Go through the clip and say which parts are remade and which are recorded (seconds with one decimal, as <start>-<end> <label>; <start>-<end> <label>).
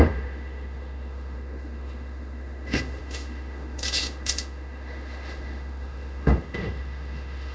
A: 0.0-7.5 remade